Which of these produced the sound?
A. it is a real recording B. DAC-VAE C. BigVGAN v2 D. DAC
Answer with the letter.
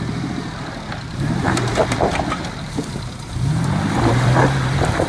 C